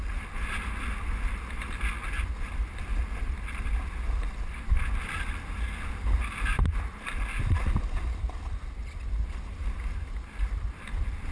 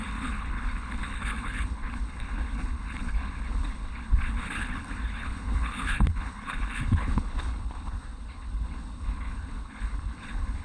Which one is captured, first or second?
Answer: first